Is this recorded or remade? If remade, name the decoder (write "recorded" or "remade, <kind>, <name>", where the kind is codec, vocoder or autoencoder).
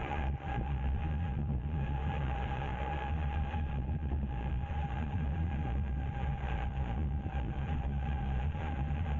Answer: remade, vocoder, Vocos